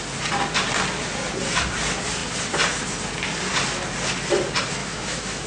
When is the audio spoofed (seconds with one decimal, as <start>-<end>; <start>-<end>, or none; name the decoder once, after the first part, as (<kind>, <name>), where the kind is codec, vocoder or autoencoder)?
4.8-5.5 (autoencoder, DAC-VAE)